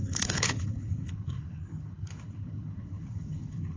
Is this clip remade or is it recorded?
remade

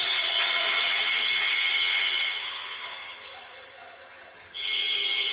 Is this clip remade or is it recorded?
remade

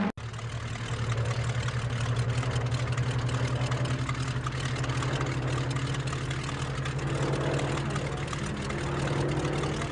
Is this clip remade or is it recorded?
recorded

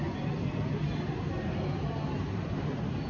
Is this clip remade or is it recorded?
recorded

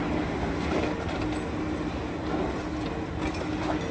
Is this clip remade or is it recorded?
recorded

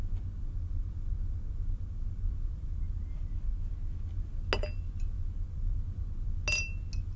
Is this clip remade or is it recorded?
recorded